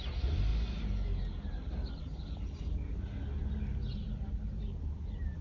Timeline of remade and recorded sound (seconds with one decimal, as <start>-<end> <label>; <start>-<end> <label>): 0.0-5.4 recorded